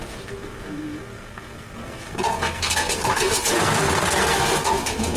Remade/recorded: remade